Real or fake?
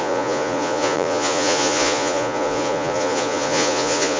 fake